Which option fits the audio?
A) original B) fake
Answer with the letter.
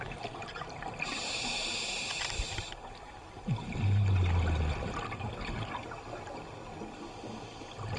A